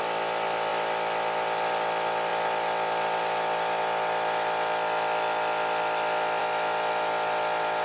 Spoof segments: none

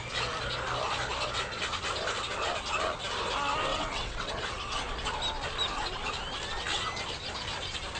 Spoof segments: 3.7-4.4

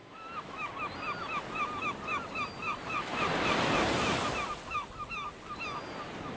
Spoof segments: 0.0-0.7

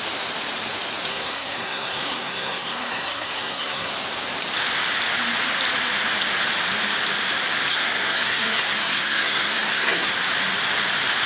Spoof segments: 1.1-3.9; 7.7-10.1

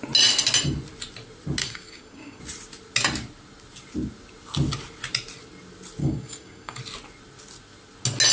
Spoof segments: 1.6-2.4; 6.0-6.8

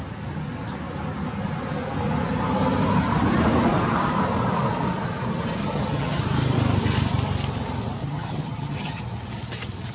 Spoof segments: 5.6-6.2; 8.0-9.0

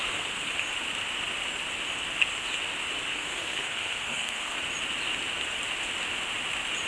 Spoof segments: 0.0-0.5; 3.1-4.6

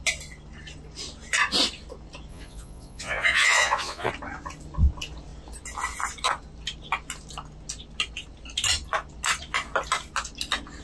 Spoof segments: 2.3-4.1